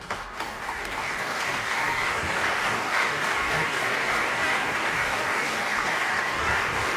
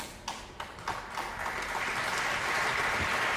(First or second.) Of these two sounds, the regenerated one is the first